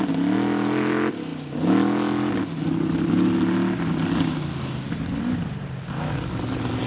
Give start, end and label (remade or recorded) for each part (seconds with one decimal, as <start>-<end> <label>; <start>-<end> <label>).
0.0-6.9 recorded